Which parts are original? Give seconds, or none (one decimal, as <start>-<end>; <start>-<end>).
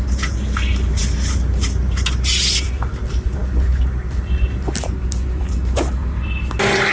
0.0-6.9